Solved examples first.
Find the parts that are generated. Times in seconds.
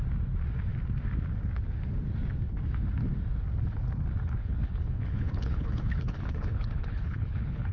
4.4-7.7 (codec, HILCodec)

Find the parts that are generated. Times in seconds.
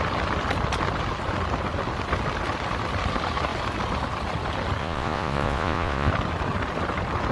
4.8-6.1 (vocoder, Vocos)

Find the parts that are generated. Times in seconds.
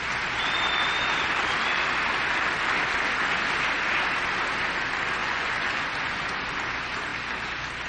5.2-6.4 (vocoder, Vocos)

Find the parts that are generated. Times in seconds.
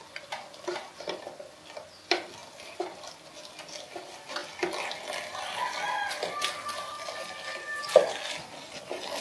none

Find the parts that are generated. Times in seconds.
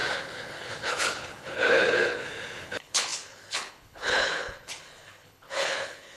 0.0-6.2 (codec, HILCodec)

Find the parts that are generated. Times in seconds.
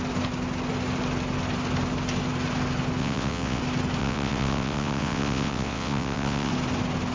3.0-3.6 (vocoder, WaveNeXt); 4.0-6.5